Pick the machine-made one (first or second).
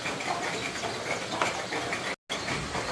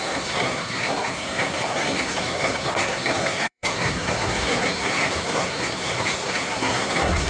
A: second